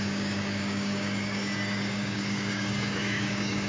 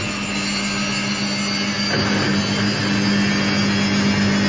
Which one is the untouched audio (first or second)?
second